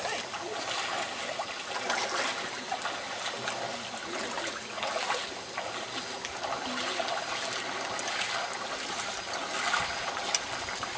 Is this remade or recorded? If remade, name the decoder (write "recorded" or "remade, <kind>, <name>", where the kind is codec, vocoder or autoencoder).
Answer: recorded